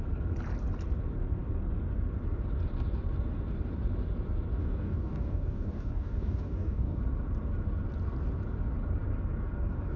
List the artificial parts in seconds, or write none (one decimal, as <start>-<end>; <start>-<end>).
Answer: 4.6-7.0